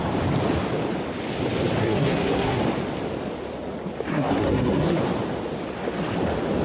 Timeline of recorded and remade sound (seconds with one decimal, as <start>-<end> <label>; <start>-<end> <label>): 0.0-1.8 recorded; 1.8-2.6 remade; 2.6-4.1 recorded; 4.1-5.0 remade; 5.0-6.6 recorded